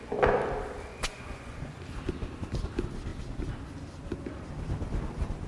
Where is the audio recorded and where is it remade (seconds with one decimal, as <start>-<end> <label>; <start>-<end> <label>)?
0.0-0.9 recorded; 0.9-1.8 remade; 1.8-5.5 recorded